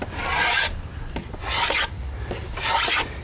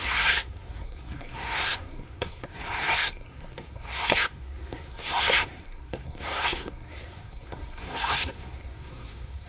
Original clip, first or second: first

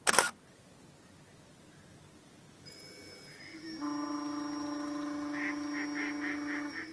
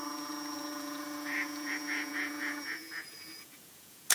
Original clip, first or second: first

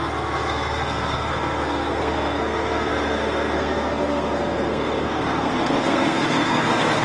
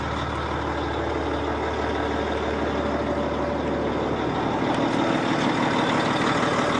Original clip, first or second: second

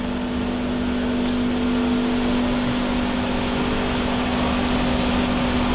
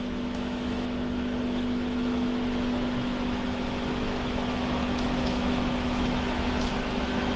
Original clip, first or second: first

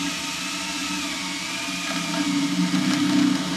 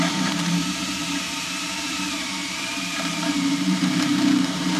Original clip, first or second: first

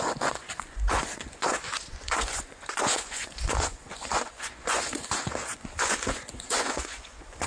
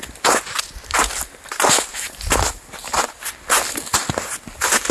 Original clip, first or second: second